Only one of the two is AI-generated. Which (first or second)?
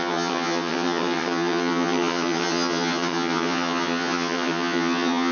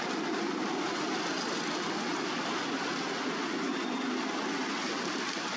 first